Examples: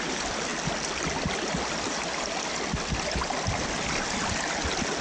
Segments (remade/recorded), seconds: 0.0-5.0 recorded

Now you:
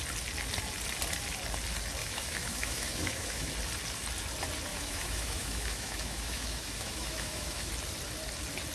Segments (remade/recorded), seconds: 0.0-2.0 recorded; 2.0-3.5 remade; 3.5-4.7 recorded; 4.7-7.7 remade; 7.7-8.7 recorded